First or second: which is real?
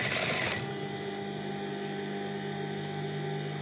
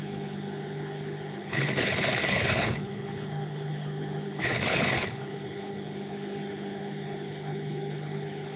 first